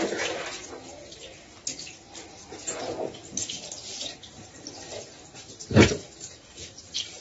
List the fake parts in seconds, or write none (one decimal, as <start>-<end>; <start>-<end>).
3.9-4.9